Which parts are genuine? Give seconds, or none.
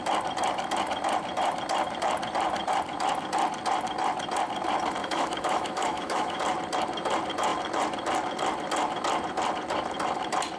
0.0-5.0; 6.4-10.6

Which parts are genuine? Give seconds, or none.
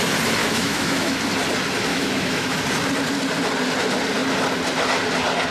0.0-0.4; 1.2-1.9; 2.6-5.5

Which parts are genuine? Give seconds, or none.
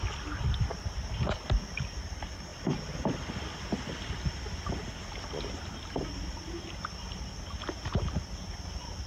0.0-9.1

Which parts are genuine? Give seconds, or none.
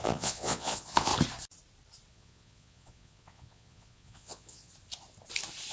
1.1-2.1; 4.7-5.7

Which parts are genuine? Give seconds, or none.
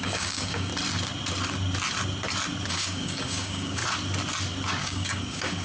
0.7-2.7; 3.8-4.8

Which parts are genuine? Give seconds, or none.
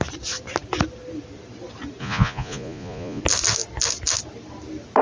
0.0-2.0; 3.2-5.0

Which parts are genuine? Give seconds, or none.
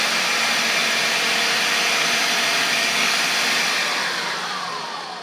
0.0-2.6; 3.2-5.2